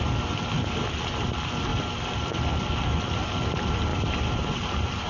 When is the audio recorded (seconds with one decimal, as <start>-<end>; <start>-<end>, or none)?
0.0-3.9